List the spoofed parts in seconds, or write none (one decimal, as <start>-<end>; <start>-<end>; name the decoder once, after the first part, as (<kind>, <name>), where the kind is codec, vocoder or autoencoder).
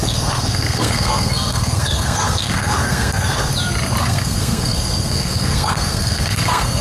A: 0.0-3.5 (codec, SNAC); 4.0-6.8